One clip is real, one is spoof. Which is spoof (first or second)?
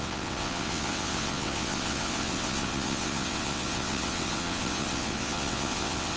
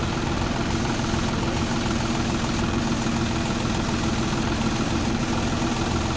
first